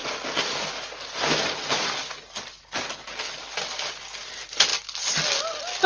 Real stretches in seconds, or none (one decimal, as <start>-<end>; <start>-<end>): 0.0-5.9